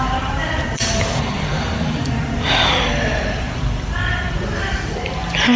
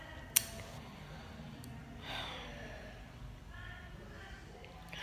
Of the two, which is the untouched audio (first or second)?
second